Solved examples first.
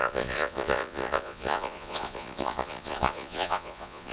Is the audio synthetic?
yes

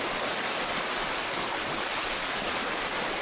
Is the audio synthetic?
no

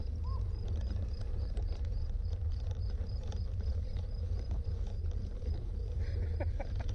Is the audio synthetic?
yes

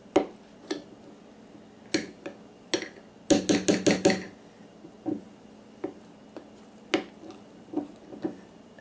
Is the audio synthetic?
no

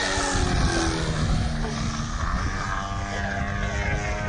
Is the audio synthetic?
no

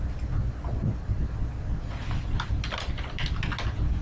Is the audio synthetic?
no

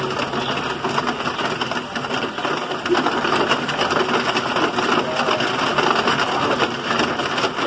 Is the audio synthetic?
no